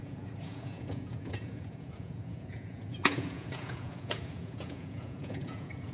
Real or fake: fake